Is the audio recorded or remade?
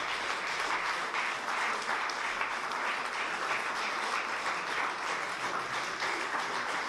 recorded